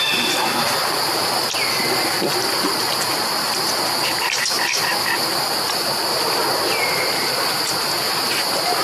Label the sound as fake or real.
real